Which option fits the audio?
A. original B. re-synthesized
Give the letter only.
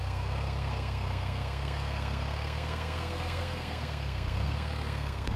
B